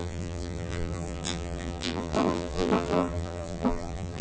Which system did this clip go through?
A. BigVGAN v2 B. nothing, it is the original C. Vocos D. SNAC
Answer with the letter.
A